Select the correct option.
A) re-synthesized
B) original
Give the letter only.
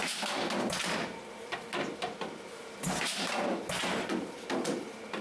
B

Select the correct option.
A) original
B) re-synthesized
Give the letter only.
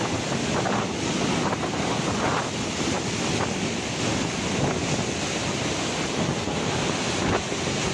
A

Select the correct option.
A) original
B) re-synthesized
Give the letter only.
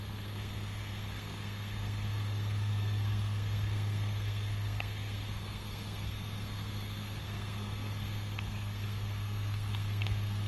B